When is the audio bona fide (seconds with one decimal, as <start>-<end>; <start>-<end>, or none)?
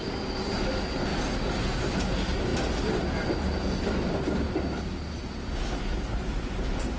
0.0-7.0